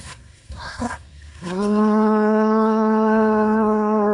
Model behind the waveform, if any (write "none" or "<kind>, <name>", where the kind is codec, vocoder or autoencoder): codec, SNAC